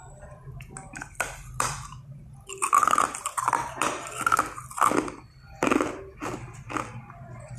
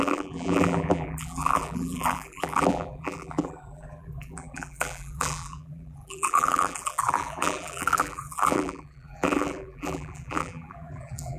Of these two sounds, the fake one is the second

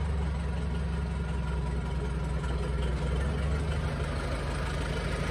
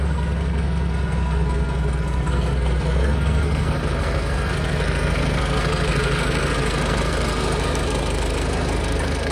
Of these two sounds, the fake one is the second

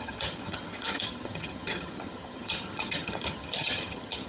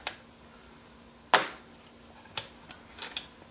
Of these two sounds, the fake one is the first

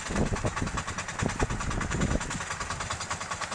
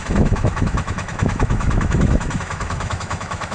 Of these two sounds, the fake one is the second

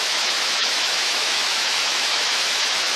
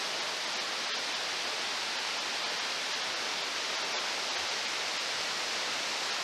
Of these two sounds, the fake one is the first